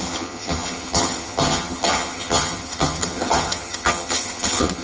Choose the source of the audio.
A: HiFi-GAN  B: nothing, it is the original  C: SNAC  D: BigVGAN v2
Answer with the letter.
A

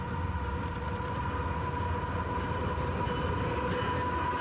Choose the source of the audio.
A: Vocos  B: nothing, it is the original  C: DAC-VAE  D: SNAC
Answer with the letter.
B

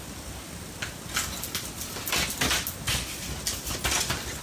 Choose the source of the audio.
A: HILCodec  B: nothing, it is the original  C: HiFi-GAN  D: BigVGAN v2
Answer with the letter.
B